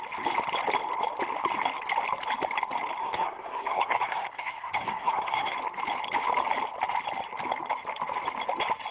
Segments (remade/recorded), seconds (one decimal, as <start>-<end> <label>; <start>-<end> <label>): 0.0-3.0 recorded; 3.0-5.5 remade; 5.5-8.9 recorded